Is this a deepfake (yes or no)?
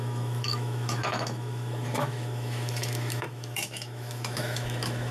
yes